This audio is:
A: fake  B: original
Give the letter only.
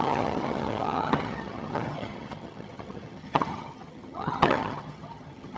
A